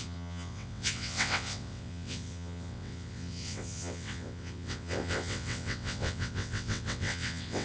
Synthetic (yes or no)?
yes